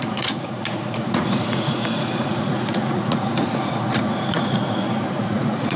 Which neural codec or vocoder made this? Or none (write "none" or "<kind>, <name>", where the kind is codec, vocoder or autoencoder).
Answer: vocoder, Vocos